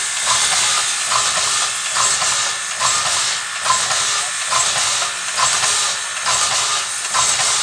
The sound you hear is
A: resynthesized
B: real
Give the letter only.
B